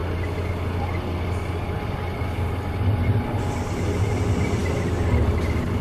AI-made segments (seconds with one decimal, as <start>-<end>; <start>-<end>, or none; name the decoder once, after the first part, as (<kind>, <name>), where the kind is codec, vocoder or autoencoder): none